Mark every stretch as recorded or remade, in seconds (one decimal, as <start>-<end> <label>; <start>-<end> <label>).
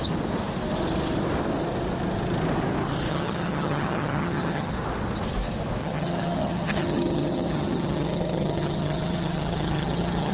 0.0-3.1 recorded; 3.1-4.7 remade; 4.7-5.8 recorded; 5.8-10.3 remade